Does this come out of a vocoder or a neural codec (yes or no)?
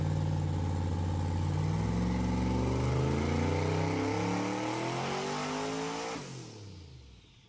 no